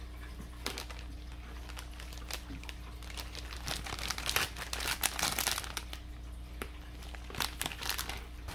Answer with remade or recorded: recorded